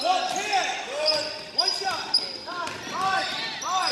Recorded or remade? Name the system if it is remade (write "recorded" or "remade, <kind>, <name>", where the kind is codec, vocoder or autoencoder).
recorded